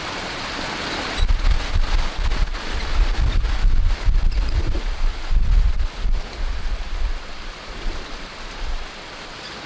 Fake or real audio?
real